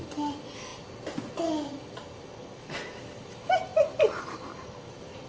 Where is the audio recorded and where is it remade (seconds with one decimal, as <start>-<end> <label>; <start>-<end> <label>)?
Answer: 0.0-5.3 recorded